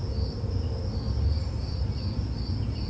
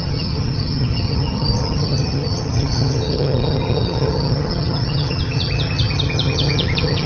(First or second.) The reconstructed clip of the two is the second